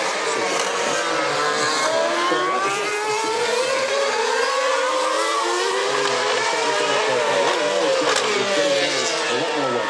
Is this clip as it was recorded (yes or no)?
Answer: yes